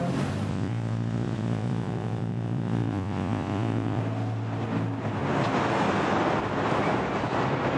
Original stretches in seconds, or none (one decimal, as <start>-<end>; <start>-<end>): 0.0-0.5; 4.0-7.8